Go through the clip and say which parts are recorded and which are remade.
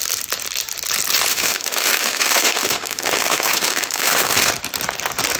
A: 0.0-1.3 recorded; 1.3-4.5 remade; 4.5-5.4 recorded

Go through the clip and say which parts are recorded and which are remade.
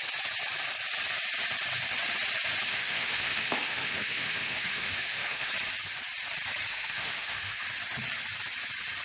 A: 0.0-2.7 recorded; 2.7-5.5 remade; 5.5-6.7 recorded; 6.7-7.6 remade; 7.6-9.0 recorded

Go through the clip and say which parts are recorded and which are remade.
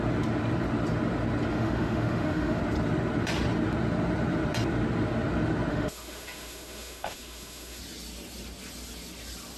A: 0.0-1.5 recorded; 1.5-2.6 remade; 2.6-5.7 recorded; 5.7-7.8 remade; 7.8-9.6 recorded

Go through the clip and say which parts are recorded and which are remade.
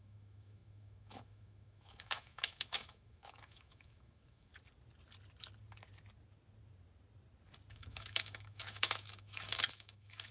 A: 0.0-4.5 remade; 4.5-7.7 recorded; 7.7-10.3 remade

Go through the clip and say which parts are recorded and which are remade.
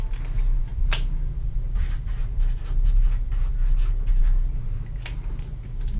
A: 0.0-6.0 recorded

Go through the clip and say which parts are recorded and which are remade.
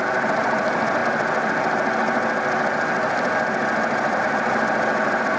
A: 0.0-5.4 recorded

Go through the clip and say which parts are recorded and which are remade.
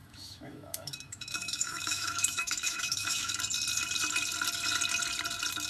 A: 0.0-3.4 remade; 3.4-5.7 recorded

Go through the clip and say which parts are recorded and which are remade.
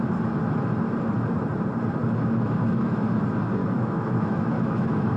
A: 0.0-2.0 recorded; 2.0-3.2 remade; 3.2-3.6 recorded; 3.6-5.2 remade